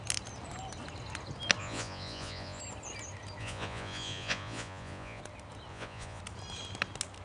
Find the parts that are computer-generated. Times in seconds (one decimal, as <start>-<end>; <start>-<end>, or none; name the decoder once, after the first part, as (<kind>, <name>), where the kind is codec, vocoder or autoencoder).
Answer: 1.6-2.6 (vocoder, Vocos); 3.4-5.2; 5.7-6.2